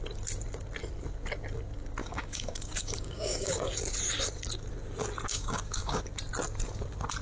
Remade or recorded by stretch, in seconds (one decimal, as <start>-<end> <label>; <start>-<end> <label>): 0.0-2.0 recorded; 2.0-3.7 remade; 3.7-5.3 recorded; 5.3-6.0 remade; 6.0-7.2 recorded